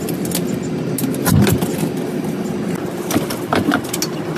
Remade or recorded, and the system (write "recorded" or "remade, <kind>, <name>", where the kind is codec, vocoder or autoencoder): recorded